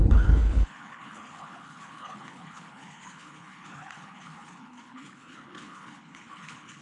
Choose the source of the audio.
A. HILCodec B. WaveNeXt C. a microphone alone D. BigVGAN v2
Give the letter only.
A